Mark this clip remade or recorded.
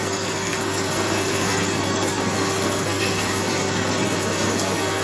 remade